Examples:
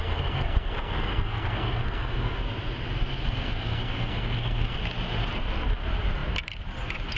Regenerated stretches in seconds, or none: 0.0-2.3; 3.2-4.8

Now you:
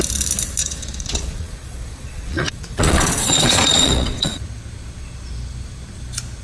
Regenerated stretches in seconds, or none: 0.6-4.4

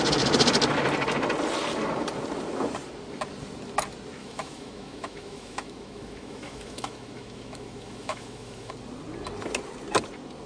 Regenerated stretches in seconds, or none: 4.2-8.7

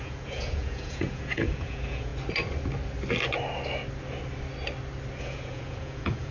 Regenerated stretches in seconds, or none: 0.0-2.1; 5.2-6.3

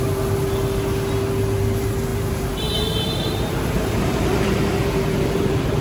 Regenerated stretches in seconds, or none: 2.1-5.8

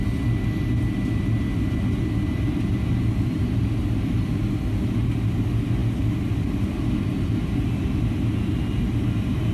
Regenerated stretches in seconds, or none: none